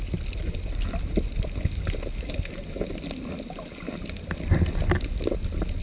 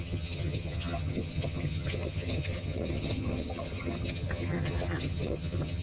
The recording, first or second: first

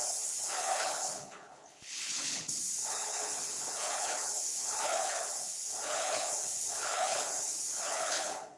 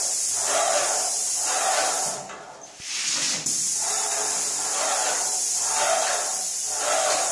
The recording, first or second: second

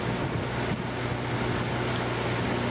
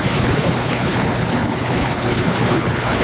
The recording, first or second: first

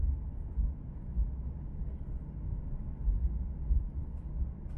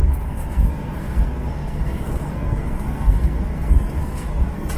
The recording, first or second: first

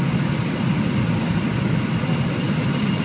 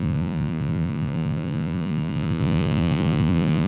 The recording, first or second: first